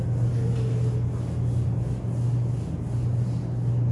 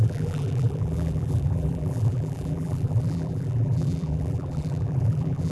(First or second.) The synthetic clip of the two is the second